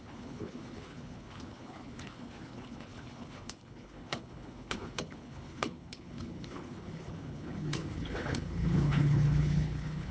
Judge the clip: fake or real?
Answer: fake